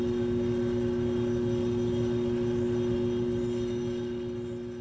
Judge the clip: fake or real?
real